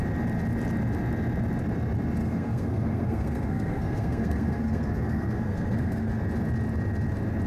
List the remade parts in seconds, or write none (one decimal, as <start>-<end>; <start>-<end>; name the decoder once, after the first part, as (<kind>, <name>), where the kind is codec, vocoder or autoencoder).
2.2-6.1 (codec, SNAC)